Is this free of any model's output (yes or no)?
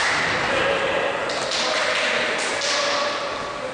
yes